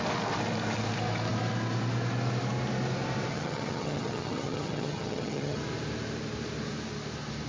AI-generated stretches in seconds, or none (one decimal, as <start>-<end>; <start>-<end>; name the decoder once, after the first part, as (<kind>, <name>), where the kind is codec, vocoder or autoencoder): 3.3-5.6 (vocoder, HiFi-GAN)